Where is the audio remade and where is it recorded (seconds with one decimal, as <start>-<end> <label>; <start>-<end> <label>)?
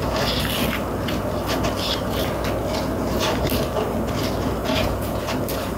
0.0-4.6 recorded; 4.6-5.2 remade; 5.2-5.8 recorded